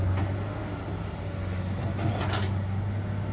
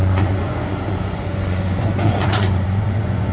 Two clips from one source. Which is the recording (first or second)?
first